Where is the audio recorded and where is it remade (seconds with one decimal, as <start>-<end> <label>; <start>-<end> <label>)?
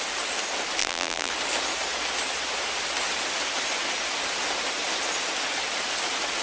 0.0-0.8 recorded; 0.8-1.3 remade; 1.3-6.4 recorded